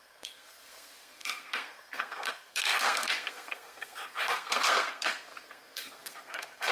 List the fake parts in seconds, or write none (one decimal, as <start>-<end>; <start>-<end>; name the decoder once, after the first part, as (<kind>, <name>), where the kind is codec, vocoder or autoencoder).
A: 0.0-6.7 (codec, SNAC)